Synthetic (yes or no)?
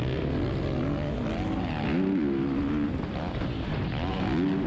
no